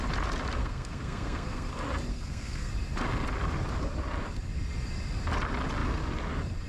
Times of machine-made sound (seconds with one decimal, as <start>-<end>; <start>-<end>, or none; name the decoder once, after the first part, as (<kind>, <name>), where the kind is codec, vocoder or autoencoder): 0.6-1.7 (codec, SNAC); 2.1-2.7